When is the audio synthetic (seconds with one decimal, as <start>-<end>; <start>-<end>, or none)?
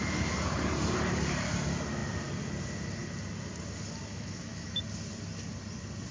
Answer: 4.1-4.8